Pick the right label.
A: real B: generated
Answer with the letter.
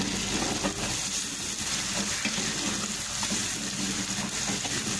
A